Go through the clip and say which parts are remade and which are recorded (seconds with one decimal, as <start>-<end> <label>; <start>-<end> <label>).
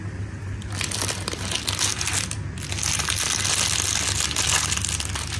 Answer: 0.0-5.4 recorded